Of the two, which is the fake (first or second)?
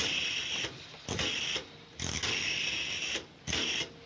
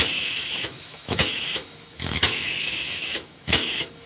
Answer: second